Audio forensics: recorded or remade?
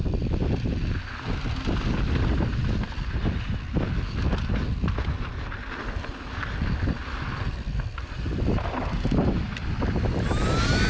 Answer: recorded